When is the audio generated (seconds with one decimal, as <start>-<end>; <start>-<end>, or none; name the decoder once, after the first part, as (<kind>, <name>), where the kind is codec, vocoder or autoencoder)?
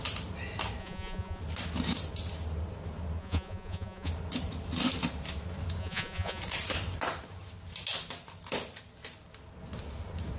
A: 0.8-1.4 (vocoder, Vocos); 3.2-4.1; 5.8-6.4